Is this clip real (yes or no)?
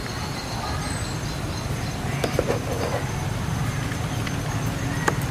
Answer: yes